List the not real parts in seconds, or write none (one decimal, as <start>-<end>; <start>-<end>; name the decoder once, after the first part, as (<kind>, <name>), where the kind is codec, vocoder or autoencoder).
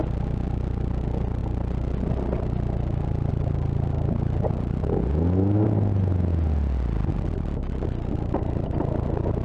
none